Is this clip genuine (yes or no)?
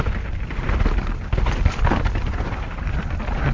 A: no